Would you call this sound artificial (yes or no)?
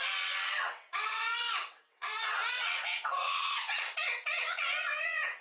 yes